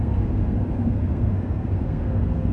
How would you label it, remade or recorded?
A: remade